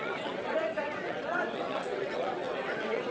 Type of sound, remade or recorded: remade